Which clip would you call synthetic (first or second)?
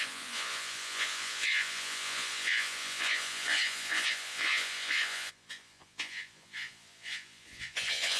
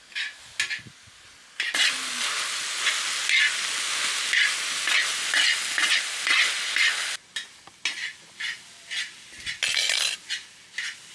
first